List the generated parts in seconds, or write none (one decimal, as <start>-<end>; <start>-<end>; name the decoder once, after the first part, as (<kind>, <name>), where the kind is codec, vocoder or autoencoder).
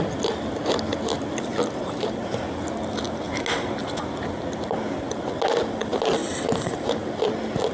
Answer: 1.8-2.5 (vocoder, BigVGAN v2); 6.2-6.9